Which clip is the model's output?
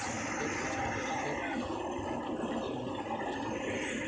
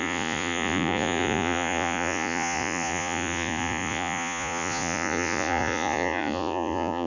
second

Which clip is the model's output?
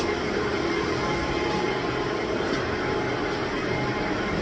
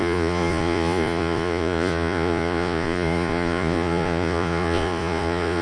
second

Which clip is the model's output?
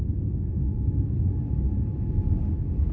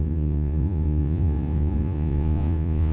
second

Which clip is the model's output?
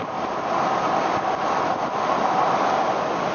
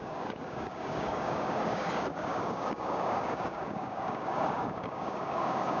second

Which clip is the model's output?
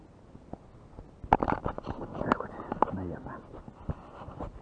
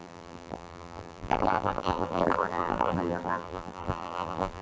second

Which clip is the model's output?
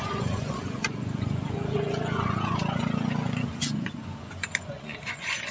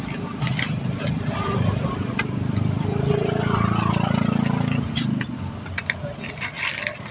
first